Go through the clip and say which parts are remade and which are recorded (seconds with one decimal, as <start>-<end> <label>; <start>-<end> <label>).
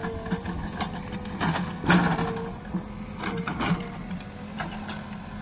0.0-5.4 recorded